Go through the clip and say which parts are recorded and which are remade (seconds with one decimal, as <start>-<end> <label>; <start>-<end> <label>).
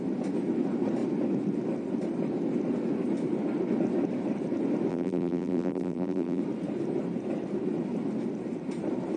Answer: 0.0-4.9 recorded; 4.9-6.4 remade; 6.4-9.2 recorded